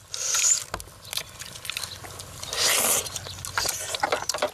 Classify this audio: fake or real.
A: real